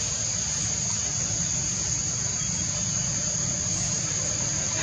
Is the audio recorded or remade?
recorded